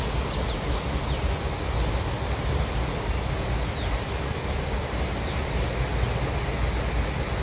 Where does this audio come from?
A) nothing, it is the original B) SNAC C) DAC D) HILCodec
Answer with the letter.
A